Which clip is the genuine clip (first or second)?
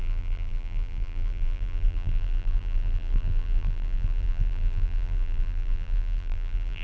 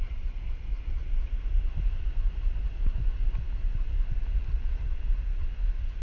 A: second